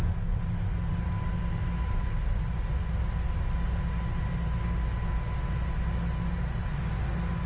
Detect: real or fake real